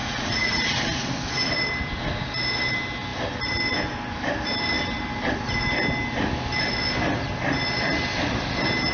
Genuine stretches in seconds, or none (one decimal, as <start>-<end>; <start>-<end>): 0.6-8.9